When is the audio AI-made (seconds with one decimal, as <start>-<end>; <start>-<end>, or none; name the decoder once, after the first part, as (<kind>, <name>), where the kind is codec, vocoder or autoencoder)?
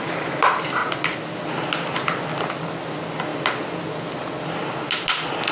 0.8-1.5 (vocoder, BigVGAN v2)